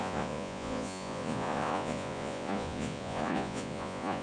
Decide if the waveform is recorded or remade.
remade